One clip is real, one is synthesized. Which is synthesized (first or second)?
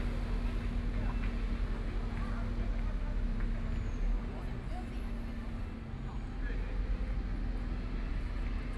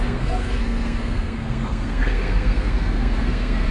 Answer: second